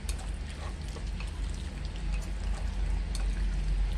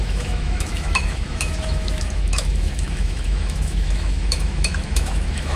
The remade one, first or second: second